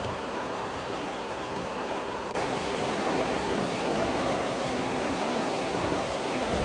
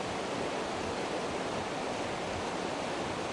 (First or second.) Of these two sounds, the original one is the second